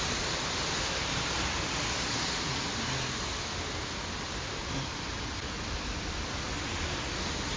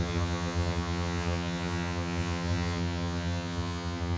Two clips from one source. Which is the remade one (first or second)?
second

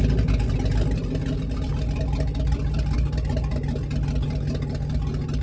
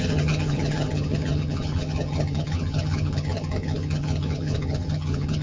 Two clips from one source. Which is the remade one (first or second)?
second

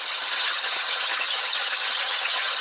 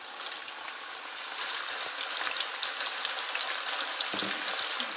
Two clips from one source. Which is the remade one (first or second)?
first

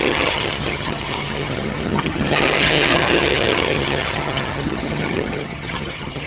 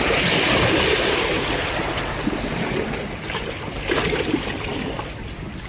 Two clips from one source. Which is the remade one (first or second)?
first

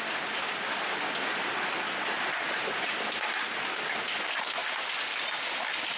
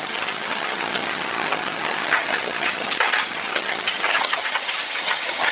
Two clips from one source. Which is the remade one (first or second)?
second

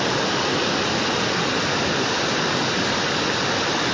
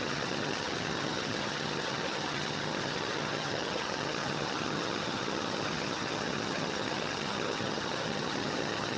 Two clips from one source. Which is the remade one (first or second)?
second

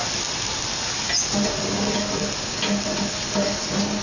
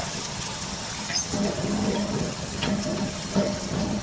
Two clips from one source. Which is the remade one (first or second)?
second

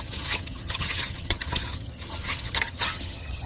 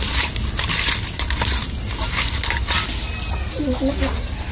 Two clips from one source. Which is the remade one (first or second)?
first